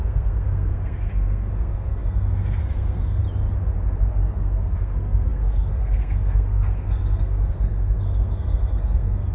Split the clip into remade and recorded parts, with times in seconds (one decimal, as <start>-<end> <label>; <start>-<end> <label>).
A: 0.0-3.2 remade; 3.2-4.1 recorded; 4.1-9.3 remade